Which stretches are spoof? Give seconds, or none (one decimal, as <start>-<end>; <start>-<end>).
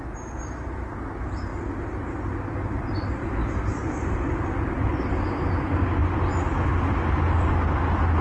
1.5-5.1